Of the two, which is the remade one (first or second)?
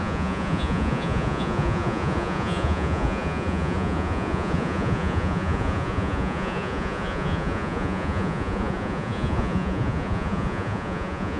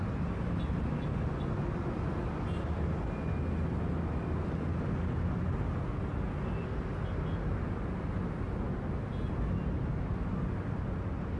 first